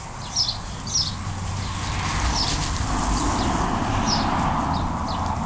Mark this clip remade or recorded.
recorded